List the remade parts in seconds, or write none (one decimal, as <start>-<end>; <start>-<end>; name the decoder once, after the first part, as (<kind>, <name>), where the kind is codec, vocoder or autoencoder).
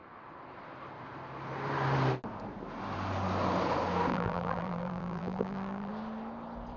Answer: 4.1-5.9 (vocoder, BigVGAN v2)